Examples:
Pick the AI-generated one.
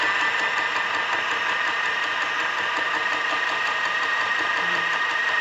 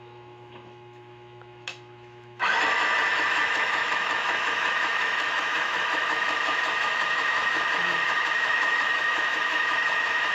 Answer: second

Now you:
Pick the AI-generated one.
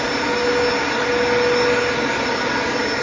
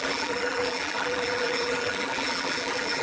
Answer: second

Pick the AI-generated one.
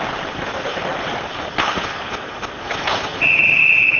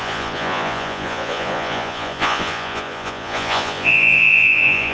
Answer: second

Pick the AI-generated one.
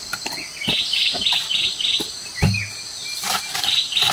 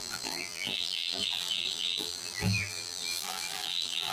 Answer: second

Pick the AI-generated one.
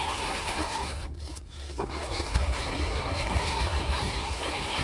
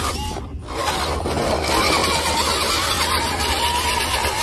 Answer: first